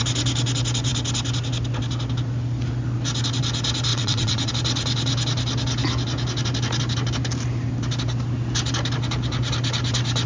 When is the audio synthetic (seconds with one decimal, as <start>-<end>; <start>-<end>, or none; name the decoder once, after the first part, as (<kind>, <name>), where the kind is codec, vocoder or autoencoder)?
3.9-4.5 (vocoder, WaveNeXt)